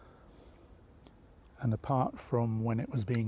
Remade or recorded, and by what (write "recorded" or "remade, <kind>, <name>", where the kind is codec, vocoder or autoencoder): recorded